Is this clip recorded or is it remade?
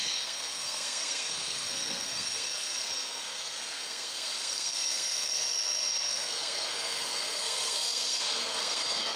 remade